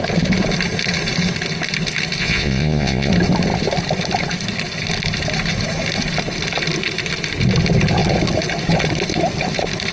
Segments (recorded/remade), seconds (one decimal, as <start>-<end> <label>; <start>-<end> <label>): 0.0-2.2 recorded; 2.2-3.1 remade; 3.1-9.9 recorded

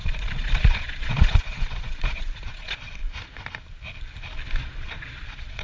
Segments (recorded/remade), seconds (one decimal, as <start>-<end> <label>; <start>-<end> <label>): 0.0-3.0 remade; 3.0-4.6 recorded; 4.6-5.6 remade

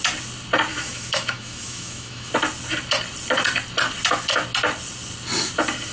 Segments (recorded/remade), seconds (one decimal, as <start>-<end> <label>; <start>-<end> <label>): 0.0-0.7 recorded; 0.7-2.3 remade; 2.3-5.9 recorded

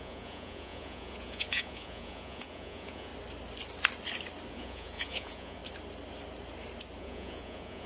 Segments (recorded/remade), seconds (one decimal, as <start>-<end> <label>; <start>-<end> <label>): 0.0-3.1 remade; 3.1-4.5 recorded; 4.5-5.6 remade; 5.6-7.0 recorded; 7.0-7.9 remade

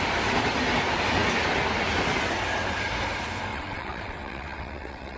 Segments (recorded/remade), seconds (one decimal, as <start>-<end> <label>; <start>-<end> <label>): 0.0-3.5 recorded; 3.5-5.2 remade

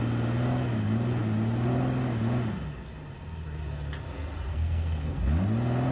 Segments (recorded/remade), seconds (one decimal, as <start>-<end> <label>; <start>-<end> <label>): 0.0-4.5 recorded; 4.5-5.2 remade; 5.2-5.9 recorded

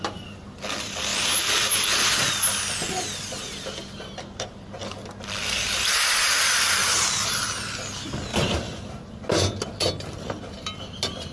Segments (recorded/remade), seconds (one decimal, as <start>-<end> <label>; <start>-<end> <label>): 0.0-6.8 recorded; 6.8-7.4 remade; 7.4-8.3 recorded; 8.3-9.1 remade; 9.1-11.3 recorded